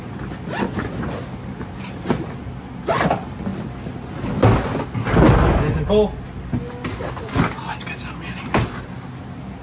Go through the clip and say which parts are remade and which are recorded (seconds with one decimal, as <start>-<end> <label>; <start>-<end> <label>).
0.0-9.6 recorded